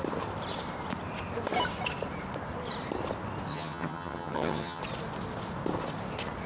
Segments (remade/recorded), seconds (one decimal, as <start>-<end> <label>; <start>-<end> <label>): 0.0-3.5 recorded; 3.5-4.8 remade; 4.8-6.5 recorded